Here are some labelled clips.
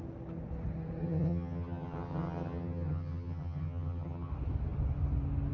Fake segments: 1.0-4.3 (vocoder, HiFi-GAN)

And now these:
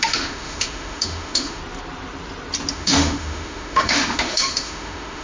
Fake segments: 0.0-1.6 (autoencoder, DAC-VAE); 2.7-5.2